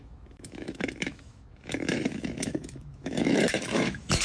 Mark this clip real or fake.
fake